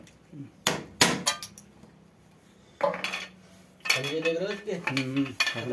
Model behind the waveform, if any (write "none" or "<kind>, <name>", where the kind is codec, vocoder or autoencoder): none